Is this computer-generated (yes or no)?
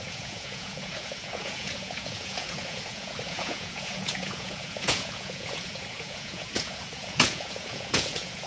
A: yes